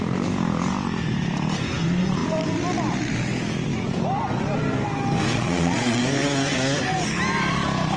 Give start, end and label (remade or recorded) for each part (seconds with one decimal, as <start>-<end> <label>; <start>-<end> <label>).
0.0-5.3 recorded; 5.3-6.0 remade; 6.0-8.0 recorded